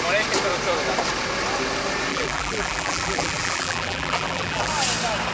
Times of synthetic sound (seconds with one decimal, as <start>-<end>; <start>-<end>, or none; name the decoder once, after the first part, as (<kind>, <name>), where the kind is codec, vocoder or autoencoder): 2.1-4.7 (vocoder, BigVGAN v2)